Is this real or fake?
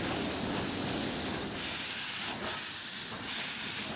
real